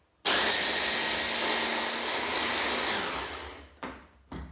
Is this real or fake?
real